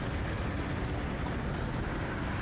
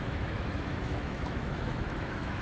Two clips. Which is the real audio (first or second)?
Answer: first